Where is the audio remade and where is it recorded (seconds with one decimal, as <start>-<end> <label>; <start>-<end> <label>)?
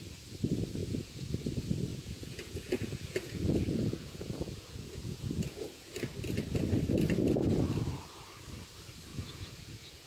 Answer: 0.0-0.8 recorded; 0.8-1.3 remade; 1.3-1.9 recorded; 1.9-6.0 remade; 6.0-9.1 recorded; 9.1-10.1 remade